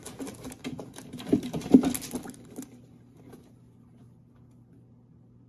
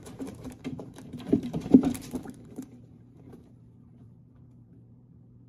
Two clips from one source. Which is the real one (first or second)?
first